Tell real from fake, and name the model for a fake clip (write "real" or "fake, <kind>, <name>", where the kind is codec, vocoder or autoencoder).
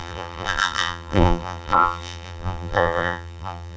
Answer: fake, vocoder, BigVGAN v2